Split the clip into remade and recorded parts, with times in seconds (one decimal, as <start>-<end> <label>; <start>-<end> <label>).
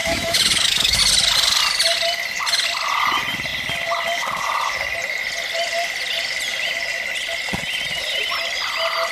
0.0-1.0 remade; 1.0-9.1 recorded